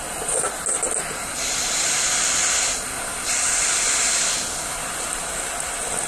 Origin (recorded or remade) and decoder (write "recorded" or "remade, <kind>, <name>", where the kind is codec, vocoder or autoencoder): recorded